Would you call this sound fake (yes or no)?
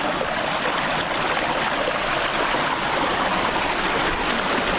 no